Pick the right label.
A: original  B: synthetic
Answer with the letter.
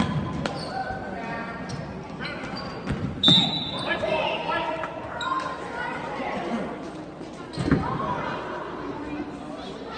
A